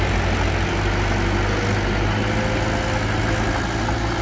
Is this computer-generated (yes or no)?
no